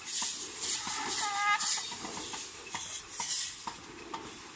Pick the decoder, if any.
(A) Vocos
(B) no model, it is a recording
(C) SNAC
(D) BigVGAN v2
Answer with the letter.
B